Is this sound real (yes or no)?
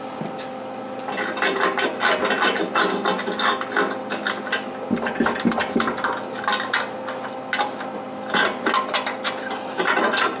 yes